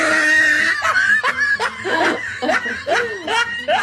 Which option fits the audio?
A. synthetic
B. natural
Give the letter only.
B